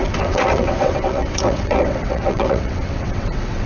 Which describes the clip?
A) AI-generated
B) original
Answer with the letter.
A